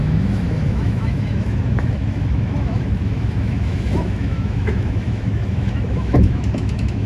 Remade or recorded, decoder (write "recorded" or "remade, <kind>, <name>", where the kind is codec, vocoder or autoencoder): remade, autoencoder, DAC-VAE